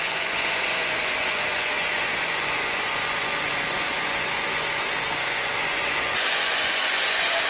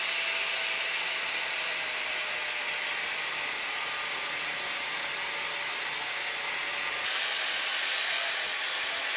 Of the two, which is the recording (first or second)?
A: second